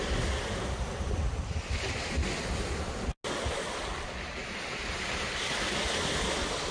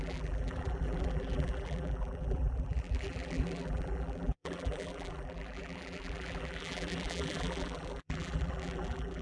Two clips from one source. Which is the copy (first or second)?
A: second